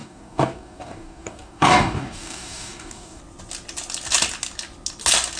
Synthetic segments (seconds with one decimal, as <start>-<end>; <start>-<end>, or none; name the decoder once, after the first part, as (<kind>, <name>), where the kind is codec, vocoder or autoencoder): 0.0-3.2 (codec, DAC)